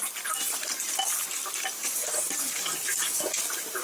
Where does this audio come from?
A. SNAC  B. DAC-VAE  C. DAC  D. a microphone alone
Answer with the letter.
D